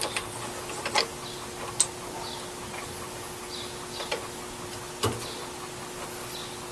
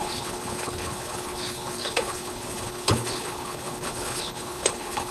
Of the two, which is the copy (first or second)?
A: second